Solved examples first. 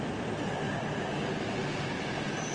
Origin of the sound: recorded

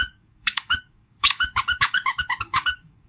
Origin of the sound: remade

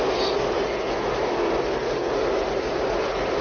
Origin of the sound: recorded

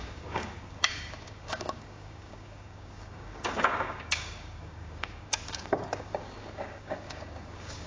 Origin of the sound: remade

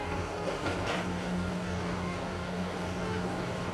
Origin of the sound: remade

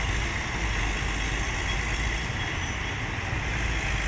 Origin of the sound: recorded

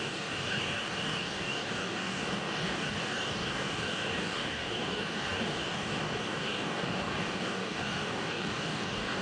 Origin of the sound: remade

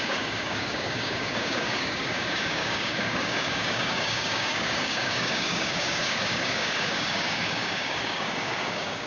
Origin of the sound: remade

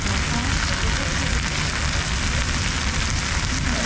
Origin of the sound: recorded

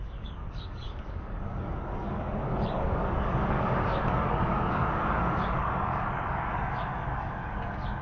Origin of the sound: remade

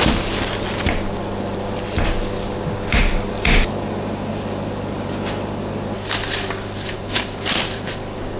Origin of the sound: recorded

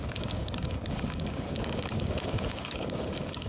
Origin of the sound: remade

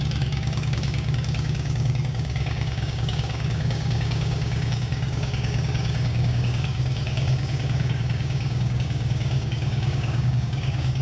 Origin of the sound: remade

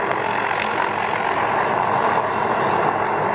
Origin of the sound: recorded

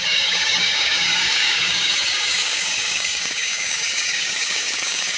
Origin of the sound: remade